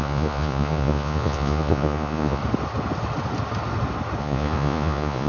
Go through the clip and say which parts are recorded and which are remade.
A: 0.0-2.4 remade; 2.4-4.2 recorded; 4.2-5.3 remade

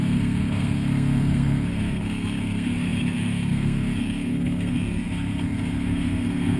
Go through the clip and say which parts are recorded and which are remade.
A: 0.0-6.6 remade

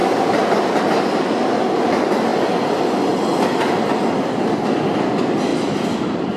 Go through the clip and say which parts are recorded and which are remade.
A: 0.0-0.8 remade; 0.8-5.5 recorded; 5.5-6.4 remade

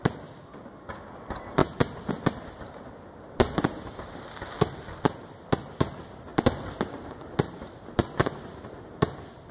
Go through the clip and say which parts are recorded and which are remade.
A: 0.0-9.5 recorded

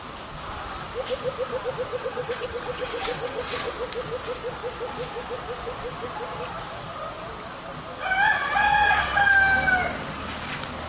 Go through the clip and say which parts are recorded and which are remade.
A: 0.0-1.9 recorded; 1.9-3.7 remade; 3.7-8.4 recorded; 8.4-9.2 remade; 9.2-10.9 recorded

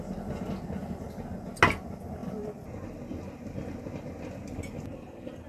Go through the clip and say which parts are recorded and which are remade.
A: 0.0-5.5 recorded

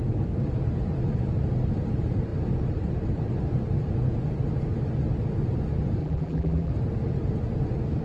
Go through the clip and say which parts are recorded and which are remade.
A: 0.0-6.0 recorded; 6.0-6.7 remade; 6.7-8.0 recorded